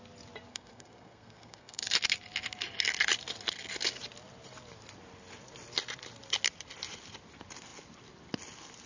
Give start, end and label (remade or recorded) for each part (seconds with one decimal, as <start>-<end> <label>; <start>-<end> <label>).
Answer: 0.0-0.5 recorded; 0.5-1.8 remade; 1.8-8.9 recorded

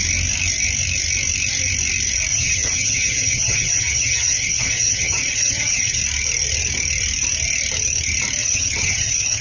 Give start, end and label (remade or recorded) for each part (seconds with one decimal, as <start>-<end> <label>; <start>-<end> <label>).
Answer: 0.0-2.3 recorded; 2.3-6.0 remade; 6.0-8.4 recorded; 8.4-9.4 remade

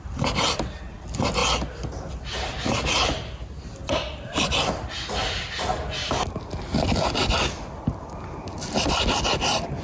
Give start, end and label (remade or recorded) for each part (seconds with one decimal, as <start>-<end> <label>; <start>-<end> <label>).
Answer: 0.0-9.8 recorded

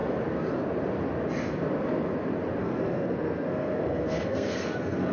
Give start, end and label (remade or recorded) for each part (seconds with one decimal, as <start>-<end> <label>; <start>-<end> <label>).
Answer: 0.0-2.6 recorded; 2.6-5.1 remade

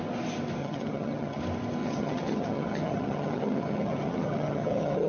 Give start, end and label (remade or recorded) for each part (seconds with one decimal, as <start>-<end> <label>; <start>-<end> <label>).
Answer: 0.0-0.6 recorded; 0.6-1.4 remade; 1.4-1.8 recorded; 1.8-5.1 remade

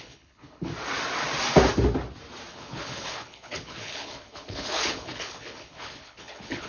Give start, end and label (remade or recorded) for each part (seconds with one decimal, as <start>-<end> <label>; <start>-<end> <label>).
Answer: 0.0-0.7 remade; 0.7-2.5 recorded; 2.5-6.7 remade

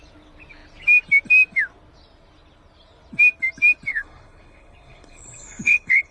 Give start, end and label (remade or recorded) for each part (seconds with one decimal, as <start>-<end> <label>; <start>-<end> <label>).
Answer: 0.0-3.9 recorded; 3.9-6.1 remade

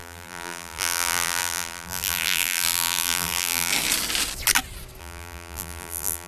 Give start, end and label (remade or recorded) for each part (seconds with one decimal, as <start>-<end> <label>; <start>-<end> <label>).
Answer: 0.0-3.7 remade; 3.7-5.0 recorded; 5.0-6.3 remade